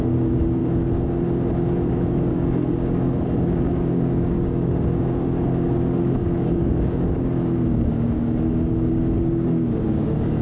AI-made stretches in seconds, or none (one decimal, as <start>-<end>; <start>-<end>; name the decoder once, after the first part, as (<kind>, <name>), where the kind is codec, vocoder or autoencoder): 0.0-0.6 (codec, DAC); 1.9-10.4